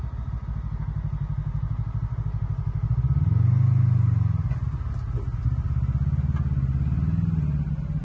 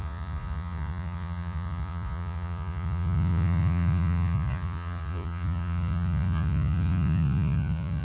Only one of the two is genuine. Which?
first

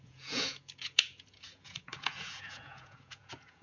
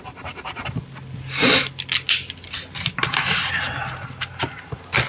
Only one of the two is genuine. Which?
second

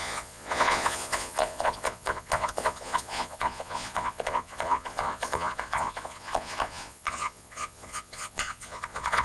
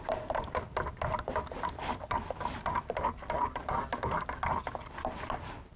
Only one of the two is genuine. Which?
second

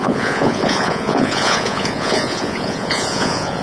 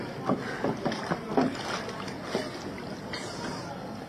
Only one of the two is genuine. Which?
second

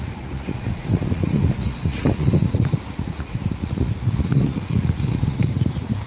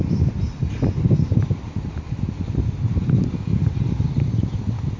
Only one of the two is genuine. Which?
second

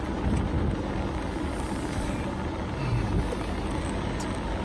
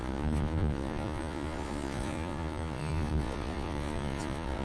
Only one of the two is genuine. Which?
first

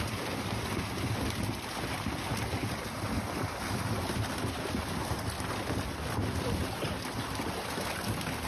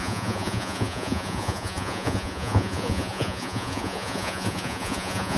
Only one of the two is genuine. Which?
first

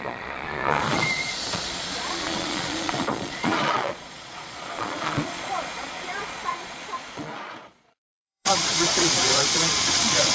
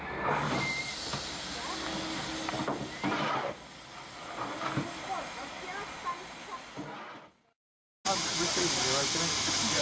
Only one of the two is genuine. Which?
second